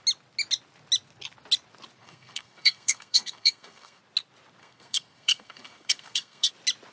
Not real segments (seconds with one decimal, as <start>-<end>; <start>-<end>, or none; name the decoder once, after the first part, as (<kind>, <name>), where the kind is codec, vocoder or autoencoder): 2.0-4.0 (codec, SNAC); 4.6-6.5